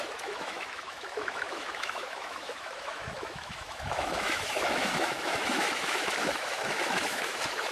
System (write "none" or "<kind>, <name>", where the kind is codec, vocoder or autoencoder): autoencoder, DAC-VAE